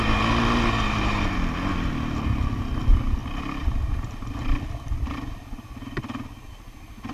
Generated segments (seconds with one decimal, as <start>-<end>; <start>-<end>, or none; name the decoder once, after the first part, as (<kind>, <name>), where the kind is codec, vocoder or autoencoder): none